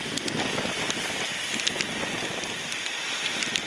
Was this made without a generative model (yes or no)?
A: yes